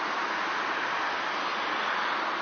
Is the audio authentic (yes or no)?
yes